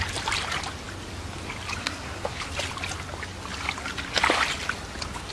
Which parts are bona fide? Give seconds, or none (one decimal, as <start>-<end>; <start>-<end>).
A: 0.0-1.8; 2.4-5.3